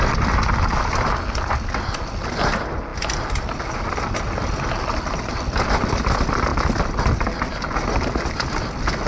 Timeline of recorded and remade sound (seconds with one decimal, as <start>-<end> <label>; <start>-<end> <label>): 0.0-9.1 recorded